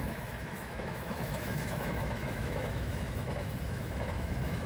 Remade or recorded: remade